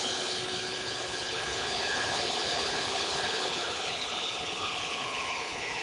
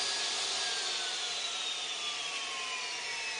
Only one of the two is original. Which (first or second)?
second